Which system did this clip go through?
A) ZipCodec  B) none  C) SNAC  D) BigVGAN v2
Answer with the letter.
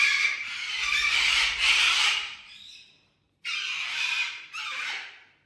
D